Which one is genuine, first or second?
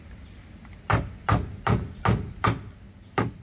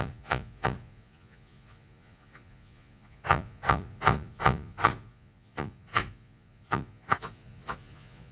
first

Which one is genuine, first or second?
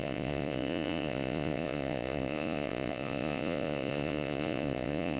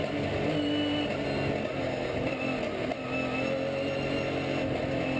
second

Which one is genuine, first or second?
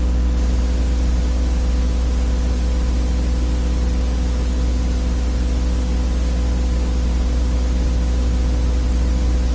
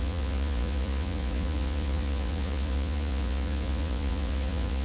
first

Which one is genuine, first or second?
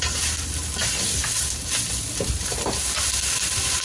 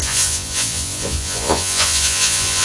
first